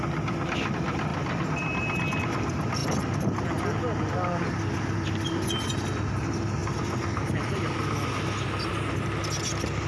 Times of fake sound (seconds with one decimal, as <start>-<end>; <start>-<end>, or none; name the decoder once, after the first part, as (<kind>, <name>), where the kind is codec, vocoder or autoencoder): none